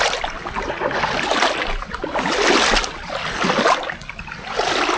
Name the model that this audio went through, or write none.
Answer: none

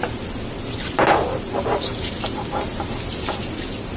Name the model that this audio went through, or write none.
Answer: none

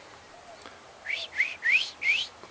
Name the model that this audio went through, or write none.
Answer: none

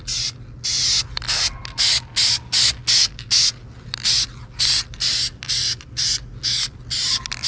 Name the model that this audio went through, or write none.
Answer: none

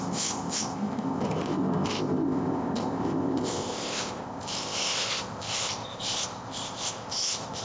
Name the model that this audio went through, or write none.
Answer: codec, ZipCodec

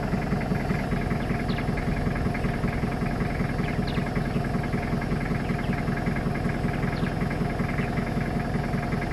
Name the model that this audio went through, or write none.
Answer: none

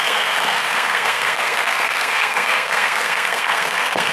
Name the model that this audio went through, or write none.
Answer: codec, SNAC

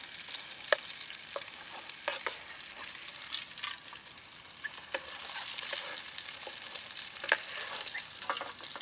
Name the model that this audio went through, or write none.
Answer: none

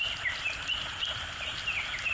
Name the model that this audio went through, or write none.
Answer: none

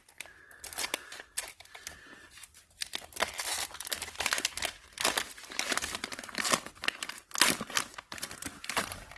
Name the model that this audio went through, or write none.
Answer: none